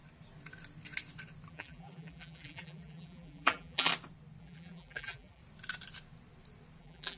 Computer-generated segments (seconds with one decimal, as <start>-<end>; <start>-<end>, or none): 1.5-3.9; 4.4-5.4; 6.8-7.2